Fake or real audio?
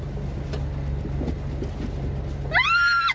real